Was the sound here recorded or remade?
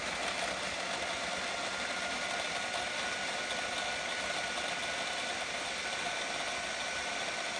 recorded